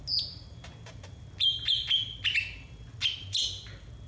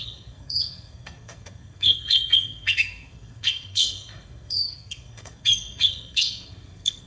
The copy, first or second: second